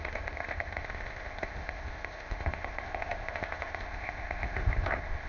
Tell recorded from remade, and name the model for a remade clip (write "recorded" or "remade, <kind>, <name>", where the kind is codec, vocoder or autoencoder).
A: remade, codec, ZipCodec